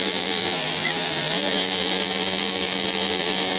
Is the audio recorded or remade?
remade